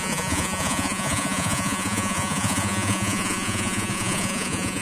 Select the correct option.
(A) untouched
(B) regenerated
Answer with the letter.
B